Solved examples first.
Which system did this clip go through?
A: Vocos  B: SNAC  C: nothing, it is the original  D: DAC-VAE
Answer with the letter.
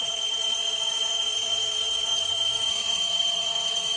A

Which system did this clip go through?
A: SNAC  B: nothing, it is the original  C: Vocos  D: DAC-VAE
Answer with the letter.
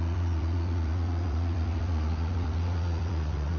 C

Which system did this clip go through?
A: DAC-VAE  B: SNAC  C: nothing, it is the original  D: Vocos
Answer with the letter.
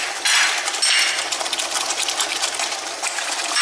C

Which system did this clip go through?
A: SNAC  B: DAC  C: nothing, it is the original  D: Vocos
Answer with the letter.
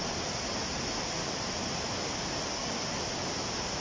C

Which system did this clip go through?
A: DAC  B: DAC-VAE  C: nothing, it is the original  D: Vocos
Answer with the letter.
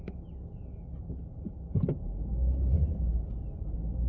C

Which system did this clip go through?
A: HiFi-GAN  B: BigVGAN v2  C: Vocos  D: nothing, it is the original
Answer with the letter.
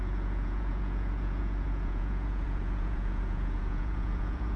C